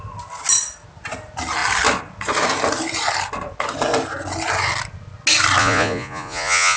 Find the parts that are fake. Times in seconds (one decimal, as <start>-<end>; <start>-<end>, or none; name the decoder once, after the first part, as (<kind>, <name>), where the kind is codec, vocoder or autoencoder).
5.6-6.8 (vocoder, Vocos)